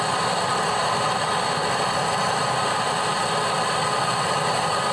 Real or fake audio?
real